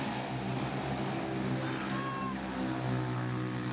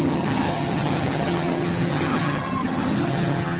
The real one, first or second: first